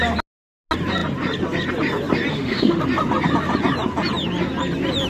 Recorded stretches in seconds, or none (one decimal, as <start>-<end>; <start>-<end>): 0.0-2.3; 2.8-5.1